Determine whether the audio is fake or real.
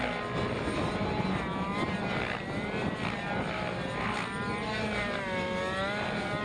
real